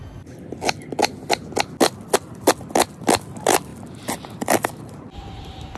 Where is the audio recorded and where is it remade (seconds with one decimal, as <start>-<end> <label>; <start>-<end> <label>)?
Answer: 0.0-5.8 recorded